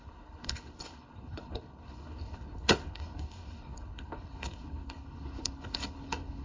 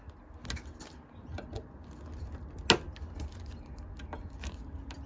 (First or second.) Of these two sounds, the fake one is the first